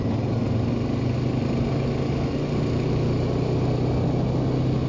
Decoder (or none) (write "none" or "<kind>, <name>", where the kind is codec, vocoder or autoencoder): none